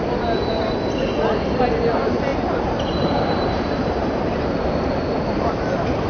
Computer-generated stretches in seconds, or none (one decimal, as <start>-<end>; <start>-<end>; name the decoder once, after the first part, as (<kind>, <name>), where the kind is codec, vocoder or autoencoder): 2.3-6.1 (vocoder, BigVGAN v2)